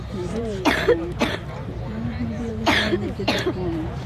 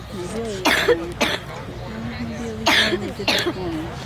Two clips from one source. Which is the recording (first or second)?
second